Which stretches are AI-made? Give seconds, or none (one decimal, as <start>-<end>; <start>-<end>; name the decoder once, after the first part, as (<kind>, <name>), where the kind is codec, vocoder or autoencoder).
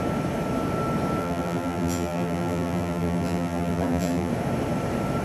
1.2-4.3 (vocoder, BigVGAN v2)